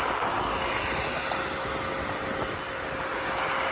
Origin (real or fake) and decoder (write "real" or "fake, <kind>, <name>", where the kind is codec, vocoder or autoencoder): real